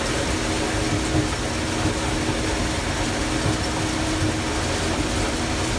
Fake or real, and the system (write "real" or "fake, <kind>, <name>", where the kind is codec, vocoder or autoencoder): real